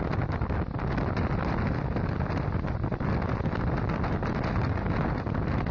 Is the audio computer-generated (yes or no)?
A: no